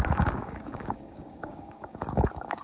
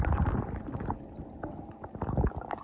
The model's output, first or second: first